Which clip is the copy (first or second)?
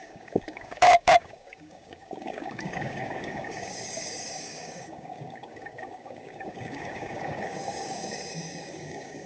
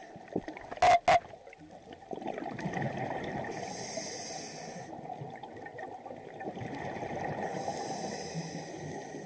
first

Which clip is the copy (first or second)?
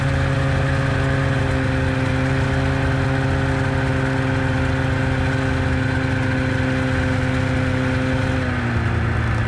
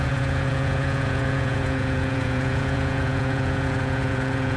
second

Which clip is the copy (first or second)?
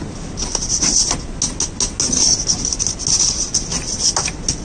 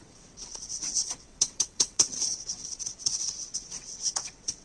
second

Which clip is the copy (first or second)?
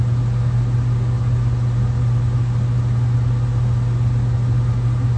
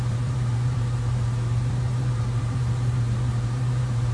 second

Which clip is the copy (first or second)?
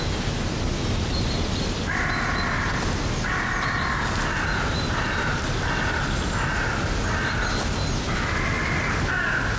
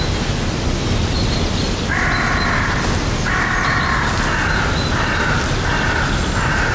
second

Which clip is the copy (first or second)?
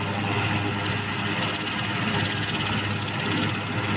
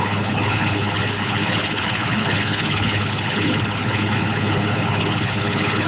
second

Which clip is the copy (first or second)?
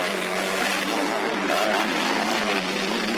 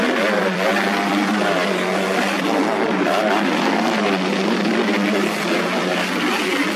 second